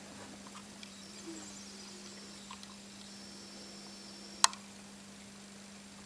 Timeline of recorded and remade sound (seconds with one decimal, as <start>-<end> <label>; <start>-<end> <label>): 0.0-0.6 recorded; 0.6-1.3 remade; 1.3-6.1 recorded